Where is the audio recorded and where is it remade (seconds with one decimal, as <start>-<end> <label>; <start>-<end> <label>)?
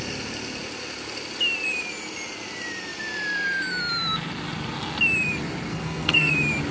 0.0-5.7 recorded; 5.7-6.3 remade; 6.3-6.7 recorded